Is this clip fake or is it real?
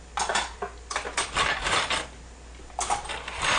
real